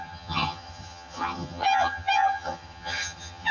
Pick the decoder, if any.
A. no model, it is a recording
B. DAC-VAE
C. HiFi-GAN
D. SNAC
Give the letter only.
C